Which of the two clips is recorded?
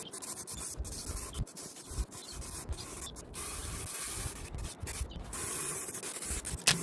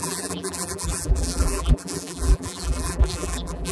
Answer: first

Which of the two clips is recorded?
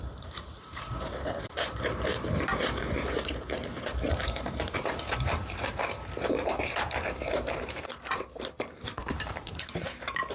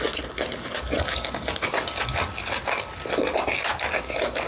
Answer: second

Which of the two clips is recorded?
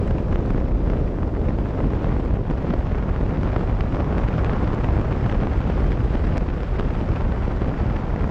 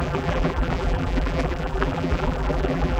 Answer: first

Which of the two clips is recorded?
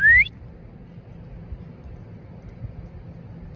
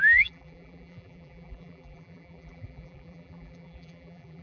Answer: first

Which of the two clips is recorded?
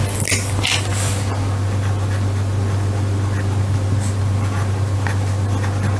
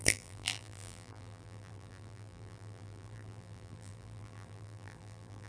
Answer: first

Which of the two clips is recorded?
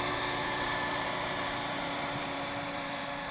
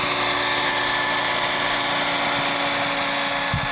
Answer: second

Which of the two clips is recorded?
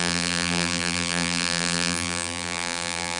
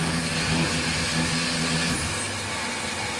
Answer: second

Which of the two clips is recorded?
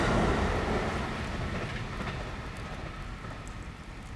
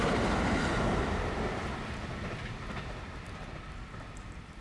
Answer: first